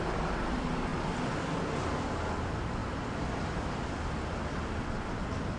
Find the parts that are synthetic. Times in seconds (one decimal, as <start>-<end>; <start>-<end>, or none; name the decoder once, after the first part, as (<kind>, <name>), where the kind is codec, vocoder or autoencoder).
none